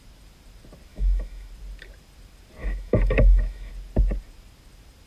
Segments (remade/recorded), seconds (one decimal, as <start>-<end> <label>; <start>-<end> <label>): 0.0-0.9 recorded; 0.9-1.5 remade; 1.5-2.6 recorded; 2.6-3.7 remade; 3.7-5.1 recorded